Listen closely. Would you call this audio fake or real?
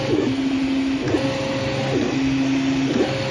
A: real